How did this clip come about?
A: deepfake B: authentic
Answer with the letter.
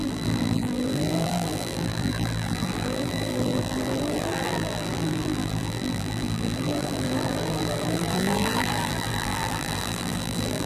A